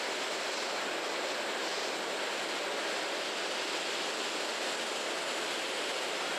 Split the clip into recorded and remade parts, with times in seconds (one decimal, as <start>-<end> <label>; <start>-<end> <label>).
0.0-6.4 recorded

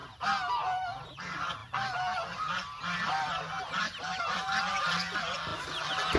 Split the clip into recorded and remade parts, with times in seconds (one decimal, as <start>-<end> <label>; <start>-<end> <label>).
0.0-0.6 recorded; 0.6-5.5 remade; 5.5-6.2 recorded

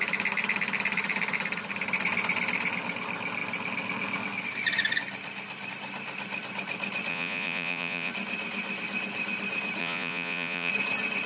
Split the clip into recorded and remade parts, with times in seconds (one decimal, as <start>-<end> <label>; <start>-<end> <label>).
0.0-7.1 recorded; 7.1-8.1 remade; 8.1-9.8 recorded; 9.8-10.7 remade; 10.7-11.3 recorded

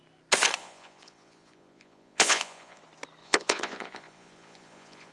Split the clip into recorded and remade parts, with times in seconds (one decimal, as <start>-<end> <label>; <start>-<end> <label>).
0.0-0.6 recorded; 0.6-2.8 remade; 2.8-3.2 recorded; 3.2-5.1 remade

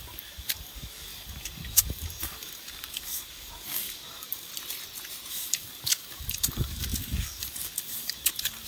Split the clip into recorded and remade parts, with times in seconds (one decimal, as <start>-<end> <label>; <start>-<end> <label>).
0.0-4.5 remade; 4.5-5.3 recorded; 5.3-8.7 remade

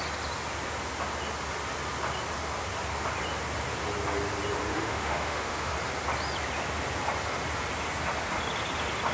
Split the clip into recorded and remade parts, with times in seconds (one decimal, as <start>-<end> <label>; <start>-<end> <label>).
0.0-4.7 recorded; 4.7-5.7 remade; 5.7-9.1 recorded

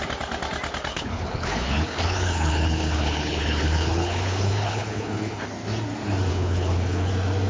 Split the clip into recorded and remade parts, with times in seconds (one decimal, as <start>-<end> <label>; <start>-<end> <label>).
0.0-0.9 recorded; 0.9-5.4 remade; 5.4-6.3 recorded; 6.3-7.1 remade; 7.1-7.5 recorded